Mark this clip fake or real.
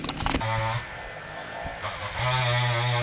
real